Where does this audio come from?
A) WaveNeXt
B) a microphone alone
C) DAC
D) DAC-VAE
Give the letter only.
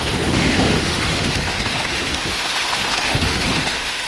D